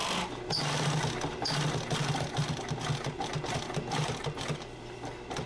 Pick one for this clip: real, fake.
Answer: real